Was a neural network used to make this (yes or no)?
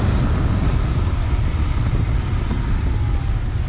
no